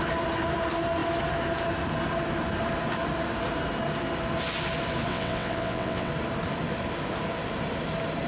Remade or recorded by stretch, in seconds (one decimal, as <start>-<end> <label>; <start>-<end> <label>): 0.0-5.1 recorded; 5.1-6.1 remade; 6.1-8.3 recorded

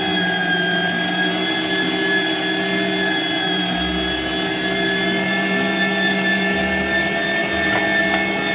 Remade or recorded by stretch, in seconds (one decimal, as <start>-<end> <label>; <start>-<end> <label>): 0.0-8.5 recorded

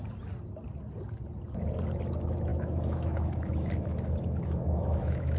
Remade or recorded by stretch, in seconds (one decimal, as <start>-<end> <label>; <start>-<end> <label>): 0.0-2.5 recorded; 2.5-5.4 remade

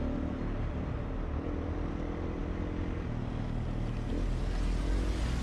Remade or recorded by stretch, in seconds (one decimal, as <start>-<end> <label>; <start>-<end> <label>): 0.0-5.4 recorded

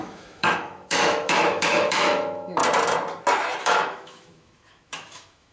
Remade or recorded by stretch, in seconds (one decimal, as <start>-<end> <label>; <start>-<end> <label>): 0.0-2.6 remade; 2.6-3.6 recorded; 3.6-5.5 remade

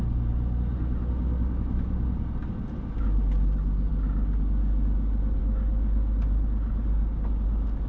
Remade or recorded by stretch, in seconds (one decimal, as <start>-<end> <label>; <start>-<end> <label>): 0.0-7.9 recorded